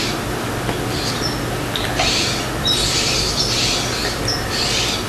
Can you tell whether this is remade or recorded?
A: recorded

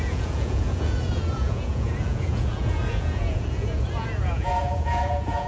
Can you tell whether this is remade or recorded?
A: remade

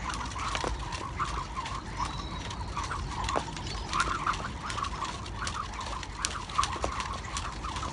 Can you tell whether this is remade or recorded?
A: recorded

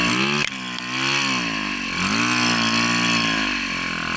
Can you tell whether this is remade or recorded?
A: recorded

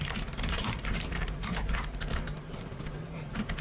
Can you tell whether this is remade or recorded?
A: remade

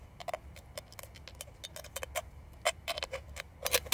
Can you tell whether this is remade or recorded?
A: recorded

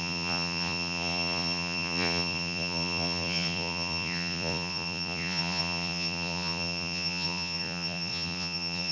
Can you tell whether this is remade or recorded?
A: remade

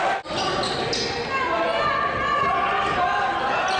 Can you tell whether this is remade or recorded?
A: recorded